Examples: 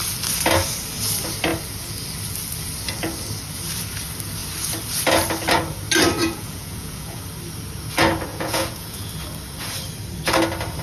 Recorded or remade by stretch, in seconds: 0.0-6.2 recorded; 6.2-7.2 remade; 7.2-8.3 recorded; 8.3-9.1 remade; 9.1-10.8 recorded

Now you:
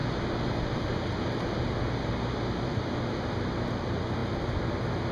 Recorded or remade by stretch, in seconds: 0.0-5.1 recorded

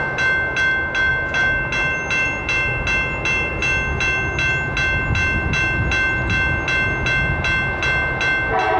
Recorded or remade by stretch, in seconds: 0.0-8.8 recorded

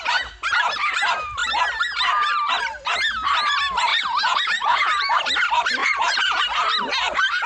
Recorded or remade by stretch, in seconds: 0.0-3.9 recorded; 3.9-5.2 remade; 5.2-5.8 recorded; 5.8-6.4 remade; 6.4-7.5 recorded

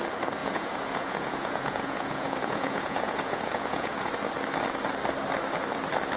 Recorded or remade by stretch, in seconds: 0.0-0.4 recorded; 0.4-4.1 remade; 4.1-6.2 recorded